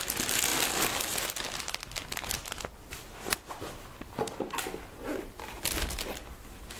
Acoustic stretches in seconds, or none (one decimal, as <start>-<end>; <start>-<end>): 0.0-6.8